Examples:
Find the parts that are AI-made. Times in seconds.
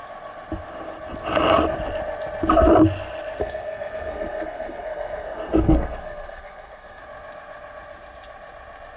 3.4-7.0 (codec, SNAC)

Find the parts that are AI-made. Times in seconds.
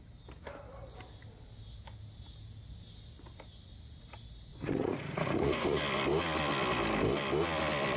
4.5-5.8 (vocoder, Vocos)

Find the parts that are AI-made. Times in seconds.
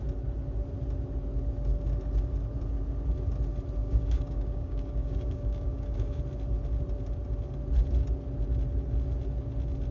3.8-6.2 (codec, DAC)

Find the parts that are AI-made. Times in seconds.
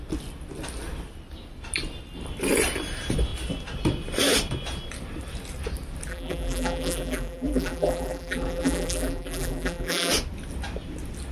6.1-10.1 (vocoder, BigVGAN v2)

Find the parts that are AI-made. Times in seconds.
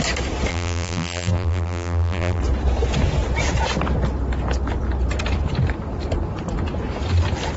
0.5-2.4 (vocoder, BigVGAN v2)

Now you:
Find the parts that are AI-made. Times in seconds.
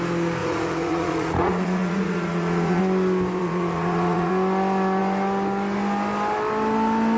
0.4-2.8 (vocoder, Vocos); 3.4-4.3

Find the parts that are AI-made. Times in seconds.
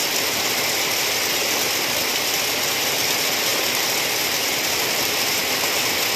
2.5-3.5 (vocoder, BigVGAN v2); 4.1-5.4